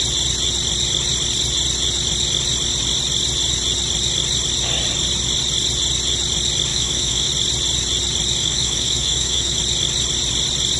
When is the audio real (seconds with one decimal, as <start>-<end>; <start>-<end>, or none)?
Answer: 0.0-6.7; 7.3-8.4; 9.6-10.8